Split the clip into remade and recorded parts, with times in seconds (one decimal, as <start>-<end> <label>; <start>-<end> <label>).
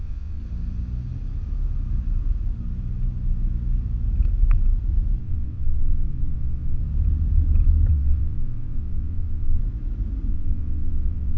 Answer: 0.0-0.4 remade; 0.4-5.2 recorded; 5.2-6.8 remade; 6.8-7.9 recorded; 7.9-9.6 remade; 9.6-10.3 recorded; 10.3-11.4 remade